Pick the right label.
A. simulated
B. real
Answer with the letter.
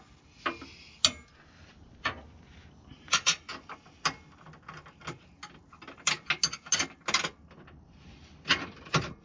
B